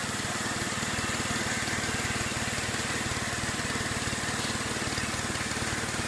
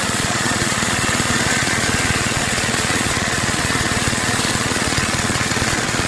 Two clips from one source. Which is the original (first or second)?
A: first